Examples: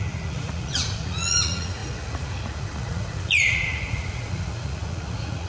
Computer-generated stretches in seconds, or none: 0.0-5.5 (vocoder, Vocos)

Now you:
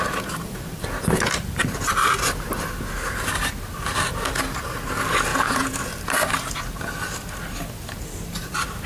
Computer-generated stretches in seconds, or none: 5.3-5.9 (vocoder, Vocos)

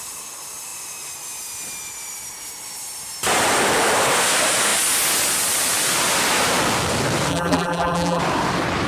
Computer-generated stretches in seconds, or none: 7.3-8.2 (vocoder, BigVGAN v2)

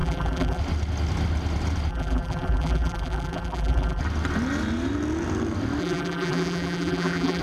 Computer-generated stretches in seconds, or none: 0.0-0.6 (vocoder, BigVGAN v2); 1.9-4.0; 5.8-7.4

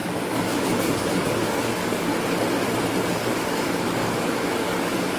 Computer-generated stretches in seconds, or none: 0.0-2.1 (codec, DAC); 3.0-5.2

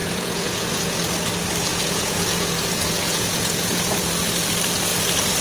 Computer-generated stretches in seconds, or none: 0.0-1.0 (vocoder, Vocos); 1.7-3.9